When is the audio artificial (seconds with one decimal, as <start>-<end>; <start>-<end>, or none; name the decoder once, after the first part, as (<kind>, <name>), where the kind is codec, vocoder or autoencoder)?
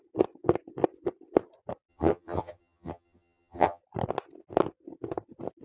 1.9-3.8 (vocoder, HiFi-GAN)